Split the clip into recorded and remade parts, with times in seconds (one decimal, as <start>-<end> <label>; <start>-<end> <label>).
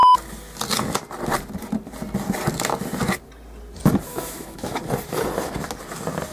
0.0-4.1 recorded; 4.1-4.8 remade; 4.8-6.3 recorded